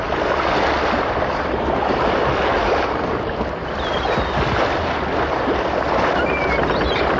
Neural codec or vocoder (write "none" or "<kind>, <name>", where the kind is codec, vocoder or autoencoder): none